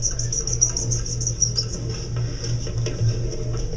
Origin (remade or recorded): recorded